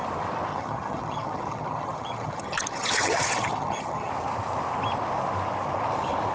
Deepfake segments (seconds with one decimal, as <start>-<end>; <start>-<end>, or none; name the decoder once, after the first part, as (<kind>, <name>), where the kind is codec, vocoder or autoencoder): 0.5-4.1 (vocoder, HiFi-GAN)